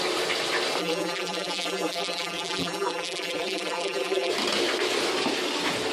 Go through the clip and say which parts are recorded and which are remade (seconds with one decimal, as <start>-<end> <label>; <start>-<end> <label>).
0.0-0.8 recorded; 0.8-4.3 remade; 4.3-5.9 recorded

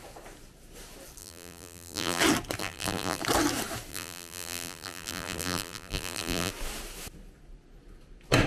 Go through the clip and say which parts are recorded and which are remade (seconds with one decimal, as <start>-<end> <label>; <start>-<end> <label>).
0.0-1.2 recorded; 1.2-2.2 remade; 2.2-2.6 recorded; 2.6-3.2 remade; 3.2-3.9 recorded; 3.9-6.5 remade; 6.5-8.5 recorded